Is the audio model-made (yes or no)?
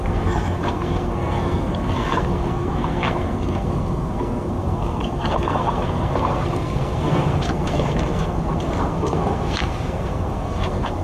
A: yes